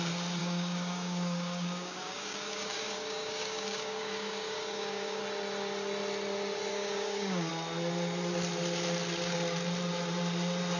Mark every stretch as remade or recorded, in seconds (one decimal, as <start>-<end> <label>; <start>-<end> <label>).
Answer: 0.0-0.4 recorded; 0.4-5.2 remade; 5.2-6.7 recorded; 6.7-7.5 remade; 7.5-10.8 recorded